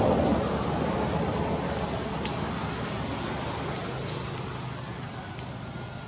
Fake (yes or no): no